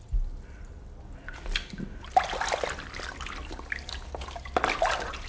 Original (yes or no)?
yes